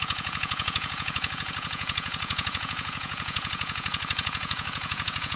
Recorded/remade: remade